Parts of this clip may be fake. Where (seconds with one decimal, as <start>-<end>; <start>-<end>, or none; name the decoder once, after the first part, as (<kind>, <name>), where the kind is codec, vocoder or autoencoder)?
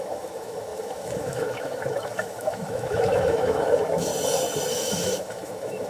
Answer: 0.0-4.1 (autoencoder, DAC-VAE); 4.7-5.9